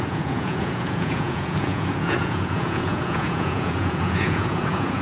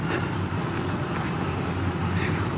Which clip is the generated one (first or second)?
first